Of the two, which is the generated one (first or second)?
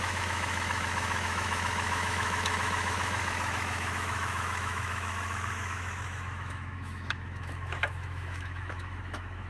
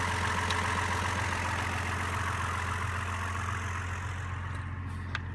first